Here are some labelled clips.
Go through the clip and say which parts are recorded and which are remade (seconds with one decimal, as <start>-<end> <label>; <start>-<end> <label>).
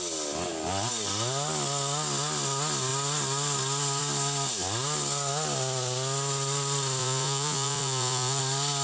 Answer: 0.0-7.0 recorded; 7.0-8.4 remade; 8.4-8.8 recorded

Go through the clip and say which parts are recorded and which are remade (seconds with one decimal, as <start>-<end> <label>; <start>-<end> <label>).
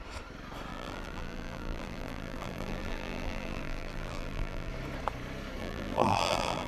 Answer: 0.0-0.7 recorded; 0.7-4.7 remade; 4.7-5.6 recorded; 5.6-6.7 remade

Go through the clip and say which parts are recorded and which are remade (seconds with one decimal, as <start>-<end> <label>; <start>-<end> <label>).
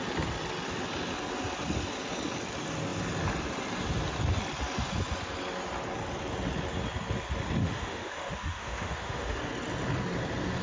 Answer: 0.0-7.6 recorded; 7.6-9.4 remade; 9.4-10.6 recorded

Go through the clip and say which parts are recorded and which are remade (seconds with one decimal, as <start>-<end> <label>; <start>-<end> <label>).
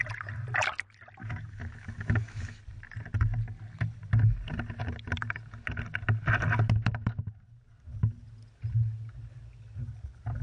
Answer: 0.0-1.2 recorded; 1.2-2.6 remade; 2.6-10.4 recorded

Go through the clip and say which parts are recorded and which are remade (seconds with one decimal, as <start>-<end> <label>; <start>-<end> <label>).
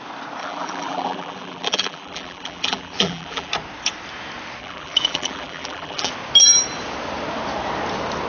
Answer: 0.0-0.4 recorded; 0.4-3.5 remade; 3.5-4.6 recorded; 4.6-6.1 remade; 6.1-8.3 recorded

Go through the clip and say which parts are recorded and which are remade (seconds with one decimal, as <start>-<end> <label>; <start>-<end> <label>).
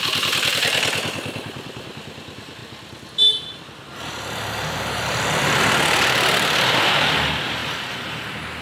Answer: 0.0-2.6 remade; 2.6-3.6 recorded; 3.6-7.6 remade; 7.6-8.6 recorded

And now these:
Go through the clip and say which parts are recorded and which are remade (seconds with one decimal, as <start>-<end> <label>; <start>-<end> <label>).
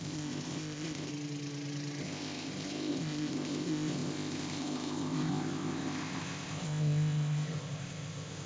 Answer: 0.0-1.1 remade; 1.1-2.0 recorded; 2.0-8.5 remade